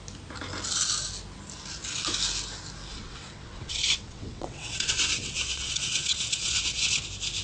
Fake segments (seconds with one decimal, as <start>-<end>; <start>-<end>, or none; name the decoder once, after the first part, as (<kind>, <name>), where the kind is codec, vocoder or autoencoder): 2.9-7.0 (vocoder, WaveNeXt)